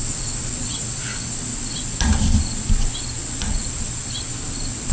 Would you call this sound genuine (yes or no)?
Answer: yes